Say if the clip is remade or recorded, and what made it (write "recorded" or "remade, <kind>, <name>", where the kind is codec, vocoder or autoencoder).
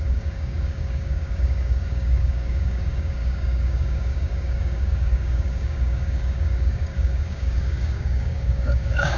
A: remade, codec, DAC